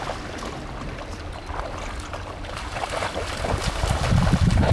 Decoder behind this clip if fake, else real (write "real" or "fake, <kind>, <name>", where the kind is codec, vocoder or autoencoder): real